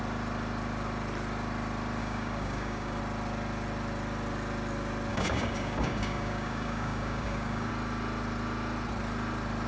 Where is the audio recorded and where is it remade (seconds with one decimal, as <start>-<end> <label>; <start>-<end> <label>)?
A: 0.0-2.0 recorded; 2.0-3.0 remade; 3.0-5.1 recorded; 5.1-7.7 remade; 7.7-9.7 recorded